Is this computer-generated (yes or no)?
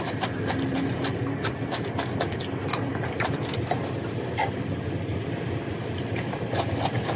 no